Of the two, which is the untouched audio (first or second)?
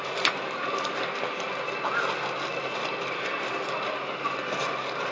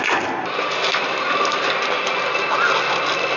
second